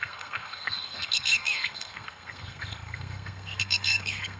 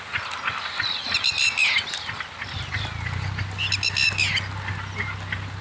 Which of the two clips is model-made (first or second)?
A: first